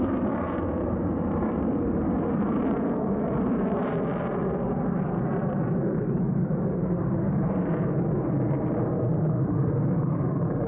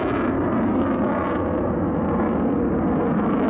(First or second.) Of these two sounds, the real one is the second